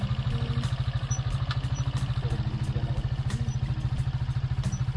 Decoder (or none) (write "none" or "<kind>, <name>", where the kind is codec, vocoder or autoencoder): none